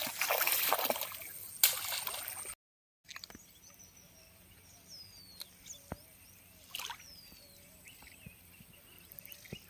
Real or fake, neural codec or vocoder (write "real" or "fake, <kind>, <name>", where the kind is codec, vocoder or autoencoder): real